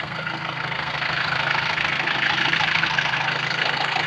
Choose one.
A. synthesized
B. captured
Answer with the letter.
A